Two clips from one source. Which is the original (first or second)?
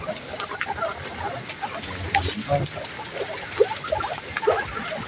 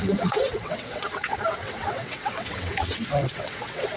first